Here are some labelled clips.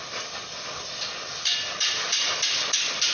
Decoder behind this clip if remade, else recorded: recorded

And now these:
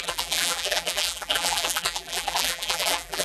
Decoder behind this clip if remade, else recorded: remade, vocoder, BigVGAN v2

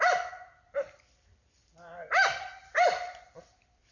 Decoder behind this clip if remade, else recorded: remade, vocoder, BigVGAN v2